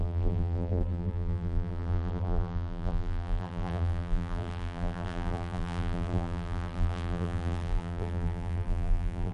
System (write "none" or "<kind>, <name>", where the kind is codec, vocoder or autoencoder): vocoder, BigVGAN v2